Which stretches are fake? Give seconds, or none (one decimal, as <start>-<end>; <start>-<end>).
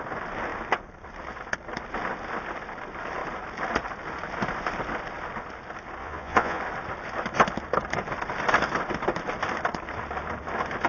6.0-6.6